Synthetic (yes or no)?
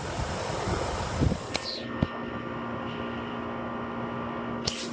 no